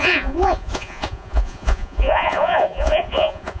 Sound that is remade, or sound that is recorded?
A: remade